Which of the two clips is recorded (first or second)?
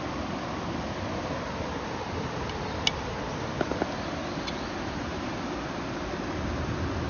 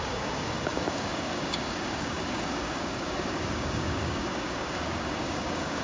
first